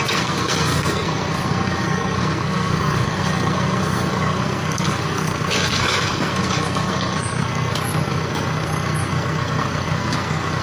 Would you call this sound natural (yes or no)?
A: no